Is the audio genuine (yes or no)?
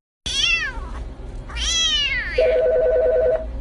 yes